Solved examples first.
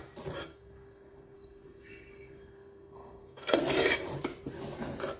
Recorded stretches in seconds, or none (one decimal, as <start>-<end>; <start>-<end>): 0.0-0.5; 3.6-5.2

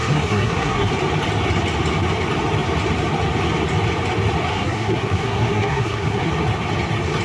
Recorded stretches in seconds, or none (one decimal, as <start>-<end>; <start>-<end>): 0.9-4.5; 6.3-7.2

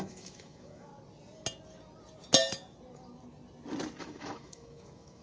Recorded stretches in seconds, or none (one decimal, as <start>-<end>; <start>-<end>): 0.9-4.0

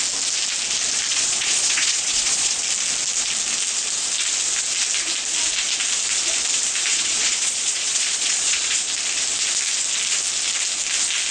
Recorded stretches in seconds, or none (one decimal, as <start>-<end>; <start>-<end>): 0.0-1.1; 2.6-6.9; 8.8-11.3

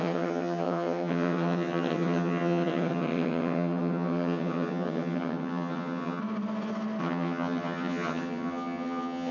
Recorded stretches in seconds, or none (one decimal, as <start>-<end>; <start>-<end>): 6.2-7.0

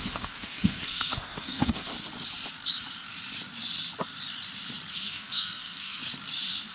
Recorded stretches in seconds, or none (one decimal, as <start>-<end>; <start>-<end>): 1.9-4.9; 6.0-6.7